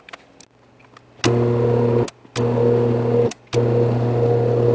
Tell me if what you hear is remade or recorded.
recorded